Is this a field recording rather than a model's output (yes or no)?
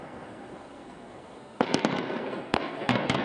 no